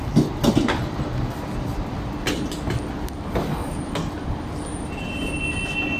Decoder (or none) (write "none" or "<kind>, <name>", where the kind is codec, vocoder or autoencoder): none